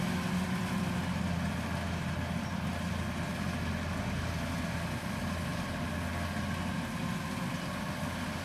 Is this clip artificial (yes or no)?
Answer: no